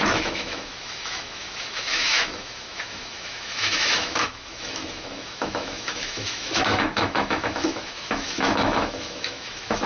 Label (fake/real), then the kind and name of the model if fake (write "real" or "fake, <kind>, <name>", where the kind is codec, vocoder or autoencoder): fake, autoencoder, DAC-VAE